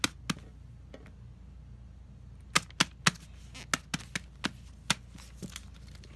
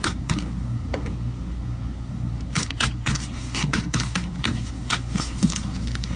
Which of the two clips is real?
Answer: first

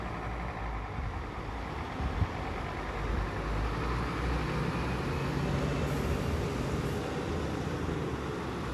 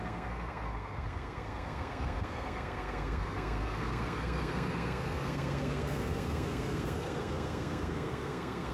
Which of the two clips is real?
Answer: first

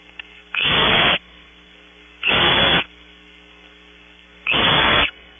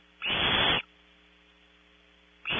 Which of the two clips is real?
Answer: second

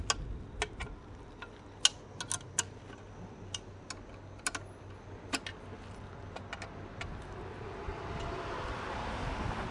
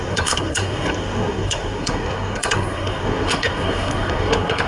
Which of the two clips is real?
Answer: first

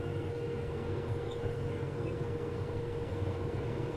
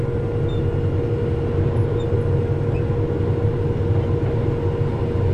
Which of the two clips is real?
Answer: second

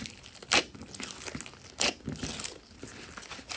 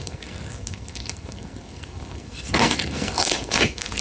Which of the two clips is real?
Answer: first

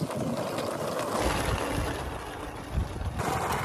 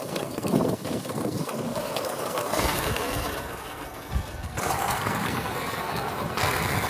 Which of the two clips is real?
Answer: first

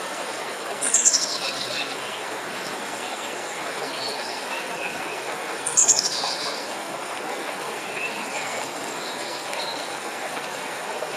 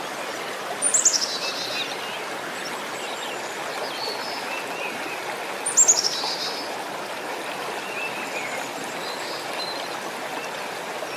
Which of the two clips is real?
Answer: second